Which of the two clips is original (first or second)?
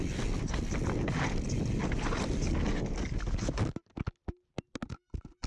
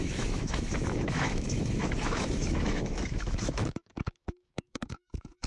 first